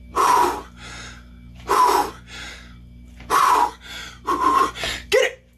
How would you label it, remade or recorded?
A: recorded